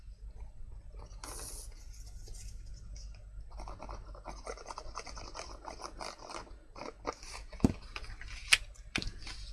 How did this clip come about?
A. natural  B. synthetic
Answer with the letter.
A